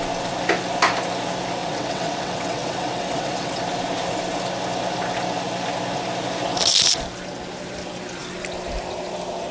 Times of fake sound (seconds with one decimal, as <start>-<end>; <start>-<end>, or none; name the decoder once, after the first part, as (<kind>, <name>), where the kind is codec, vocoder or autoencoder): 1.6-3.6 (vocoder, WaveNeXt)